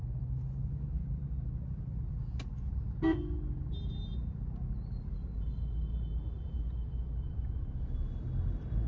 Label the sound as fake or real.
real